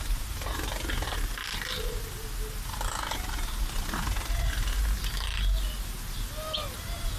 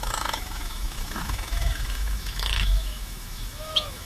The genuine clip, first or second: first